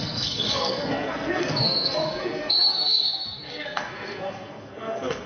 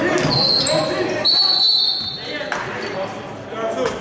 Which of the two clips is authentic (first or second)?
second